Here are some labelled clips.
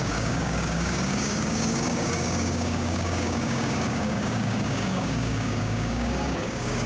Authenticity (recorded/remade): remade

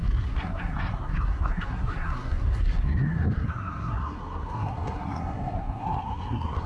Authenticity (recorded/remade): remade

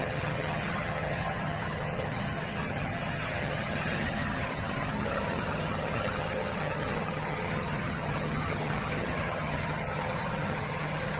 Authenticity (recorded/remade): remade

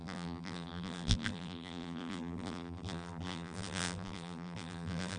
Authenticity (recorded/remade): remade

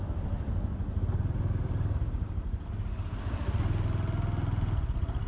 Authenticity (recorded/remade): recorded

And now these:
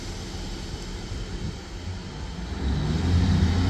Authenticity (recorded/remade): recorded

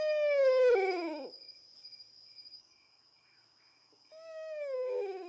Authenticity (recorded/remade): remade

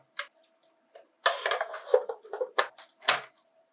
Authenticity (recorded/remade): recorded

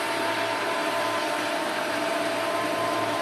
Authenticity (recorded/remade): remade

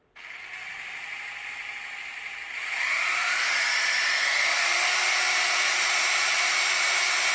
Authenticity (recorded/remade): recorded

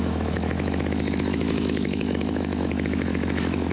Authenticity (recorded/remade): remade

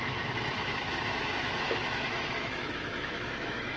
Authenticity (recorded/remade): remade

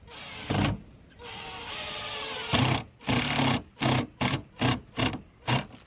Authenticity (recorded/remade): recorded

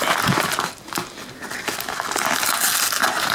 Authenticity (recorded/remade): recorded